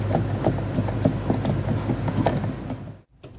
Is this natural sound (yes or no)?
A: yes